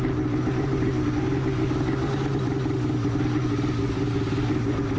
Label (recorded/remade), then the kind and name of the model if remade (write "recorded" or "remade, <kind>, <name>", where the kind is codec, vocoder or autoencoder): recorded